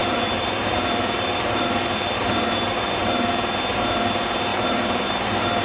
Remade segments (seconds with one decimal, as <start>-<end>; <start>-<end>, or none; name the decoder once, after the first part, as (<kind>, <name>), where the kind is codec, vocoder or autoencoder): 0.0-3.3 (vocoder, BigVGAN v2); 4.5-5.6